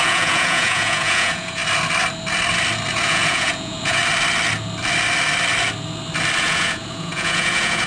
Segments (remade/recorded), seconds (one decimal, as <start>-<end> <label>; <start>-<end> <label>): 0.0-1.6 remade; 1.6-2.9 recorded; 2.9-4.0 remade; 4.0-6.4 recorded; 6.4-7.9 remade